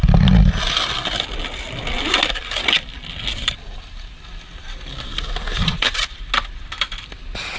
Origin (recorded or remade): recorded